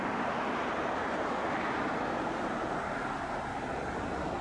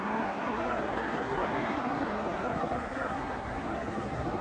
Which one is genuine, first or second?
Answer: first